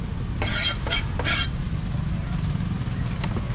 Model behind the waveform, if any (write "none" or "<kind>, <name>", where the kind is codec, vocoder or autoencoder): none